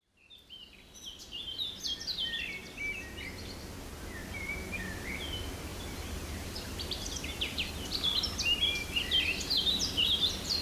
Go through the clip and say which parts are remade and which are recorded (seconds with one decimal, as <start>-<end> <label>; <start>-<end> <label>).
0.0-5.7 recorded; 5.7-7.7 remade; 7.7-10.6 recorded